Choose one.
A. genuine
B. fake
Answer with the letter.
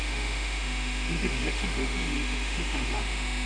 B